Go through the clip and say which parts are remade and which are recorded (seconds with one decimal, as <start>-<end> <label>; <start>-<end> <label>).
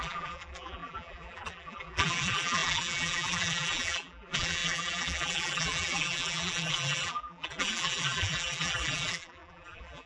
0.0-10.1 remade